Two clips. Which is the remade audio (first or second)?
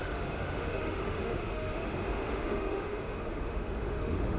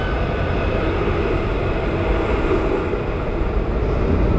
first